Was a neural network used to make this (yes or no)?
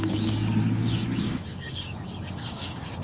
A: yes